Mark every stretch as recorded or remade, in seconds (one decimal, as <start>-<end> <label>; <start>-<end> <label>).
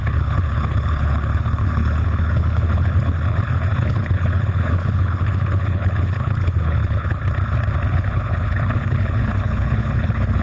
0.0-7.2 remade; 7.2-7.9 recorded; 7.9-10.4 remade